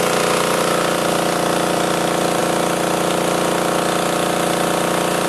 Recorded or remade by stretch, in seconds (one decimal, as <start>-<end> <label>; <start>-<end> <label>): 0.0-2.4 remade; 2.4-5.3 recorded